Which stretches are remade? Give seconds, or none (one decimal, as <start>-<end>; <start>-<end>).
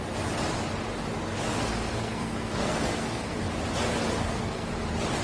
1.5-3.4; 4.2-4.7